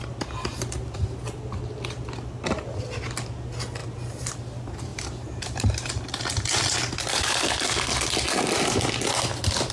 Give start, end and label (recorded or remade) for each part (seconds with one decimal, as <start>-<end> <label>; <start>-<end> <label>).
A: 0.0-3.8 recorded; 3.8-4.3 remade; 4.3-4.9 recorded; 4.9-6.2 remade; 6.2-9.7 recorded